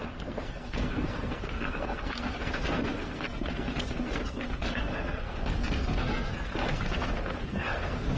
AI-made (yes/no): yes